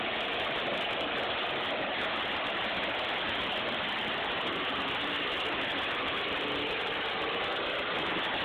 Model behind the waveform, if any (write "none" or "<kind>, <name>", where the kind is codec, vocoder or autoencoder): none